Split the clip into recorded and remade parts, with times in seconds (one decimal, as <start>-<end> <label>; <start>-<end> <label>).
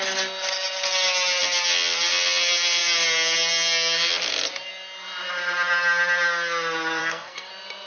0.0-7.0 recorded; 7.0-7.5 remade; 7.5-7.9 recorded